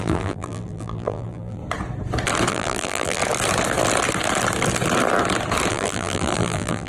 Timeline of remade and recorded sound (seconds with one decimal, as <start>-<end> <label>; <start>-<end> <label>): 0.0-1.6 remade; 1.6-2.5 recorded; 2.5-3.2 remade; 3.2-5.7 recorded; 5.7-6.9 remade